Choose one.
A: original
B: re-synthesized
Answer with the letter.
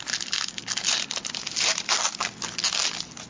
A